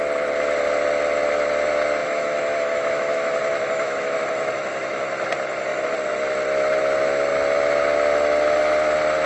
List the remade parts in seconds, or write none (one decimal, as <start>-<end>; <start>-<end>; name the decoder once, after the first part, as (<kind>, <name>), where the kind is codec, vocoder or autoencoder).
2.0-5.0 (autoencoder, DAC-VAE)